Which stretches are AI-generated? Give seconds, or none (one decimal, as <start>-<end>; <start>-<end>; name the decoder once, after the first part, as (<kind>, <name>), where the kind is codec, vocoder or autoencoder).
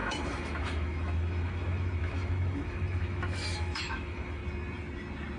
0.0-4.4 (autoencoder, DAC-VAE)